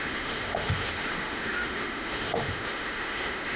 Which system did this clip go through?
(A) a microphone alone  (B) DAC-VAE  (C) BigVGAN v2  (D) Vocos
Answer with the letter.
B